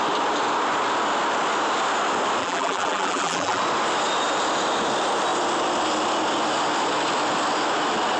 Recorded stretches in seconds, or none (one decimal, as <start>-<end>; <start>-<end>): 0.0-2.4; 3.6-8.2